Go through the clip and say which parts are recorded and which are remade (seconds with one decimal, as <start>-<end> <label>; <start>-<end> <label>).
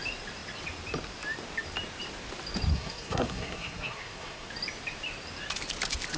0.0-2.7 recorded; 2.7-4.5 remade; 4.5-6.2 recorded